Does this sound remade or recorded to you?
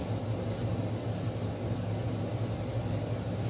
recorded